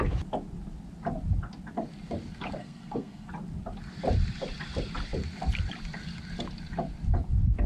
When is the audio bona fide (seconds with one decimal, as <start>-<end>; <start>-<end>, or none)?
0.0-2.6; 3.3-7.7